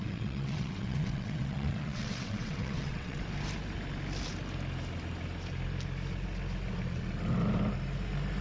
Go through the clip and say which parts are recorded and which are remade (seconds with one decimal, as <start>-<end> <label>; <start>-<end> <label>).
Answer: 0.0-3.2 remade; 3.2-8.4 recorded